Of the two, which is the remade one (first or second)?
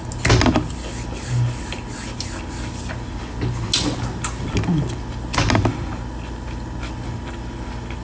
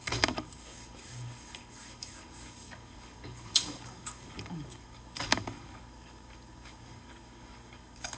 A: second